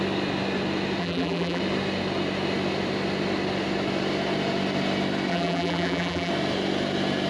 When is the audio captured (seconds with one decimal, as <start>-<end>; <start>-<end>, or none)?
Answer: 0.0-1.0; 1.6-5.3; 6.3-7.3

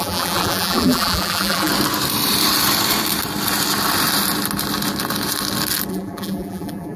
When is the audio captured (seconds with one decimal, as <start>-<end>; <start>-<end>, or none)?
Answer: 1.7-5.9

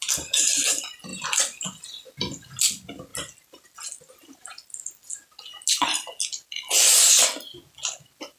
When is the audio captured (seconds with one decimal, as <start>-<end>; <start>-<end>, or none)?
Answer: 0.0-8.4

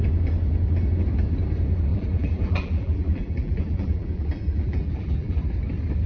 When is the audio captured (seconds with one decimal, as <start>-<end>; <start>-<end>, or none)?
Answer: 0.0-1.9; 5.4-6.1